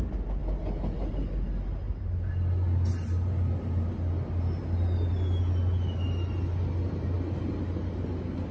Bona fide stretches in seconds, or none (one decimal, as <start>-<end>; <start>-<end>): 0.0-8.5